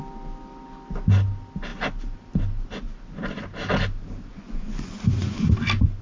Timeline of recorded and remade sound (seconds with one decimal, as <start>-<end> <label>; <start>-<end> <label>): 0.0-4.3 recorded; 4.3-5.5 remade; 5.5-6.0 recorded